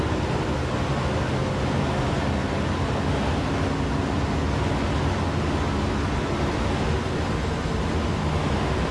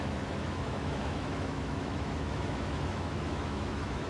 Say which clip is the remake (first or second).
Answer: second